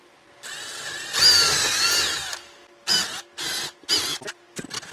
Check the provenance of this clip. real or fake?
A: real